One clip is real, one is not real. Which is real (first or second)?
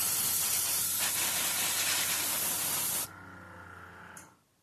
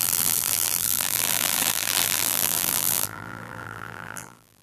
first